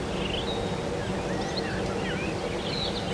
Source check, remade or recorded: recorded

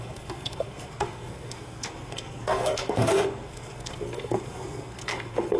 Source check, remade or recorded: remade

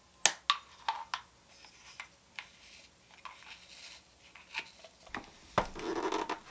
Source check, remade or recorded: recorded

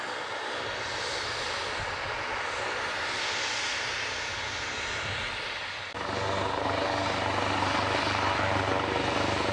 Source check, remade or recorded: recorded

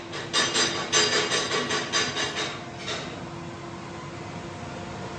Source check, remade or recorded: recorded